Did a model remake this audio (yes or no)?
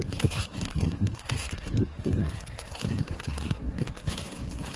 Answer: yes